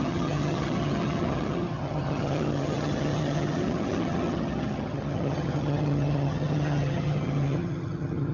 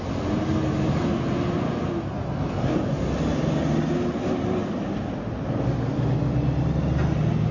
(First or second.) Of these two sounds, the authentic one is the second